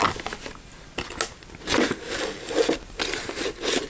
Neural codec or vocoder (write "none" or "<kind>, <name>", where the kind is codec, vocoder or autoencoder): none